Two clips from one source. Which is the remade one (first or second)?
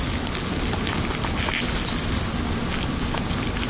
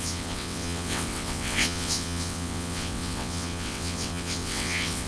second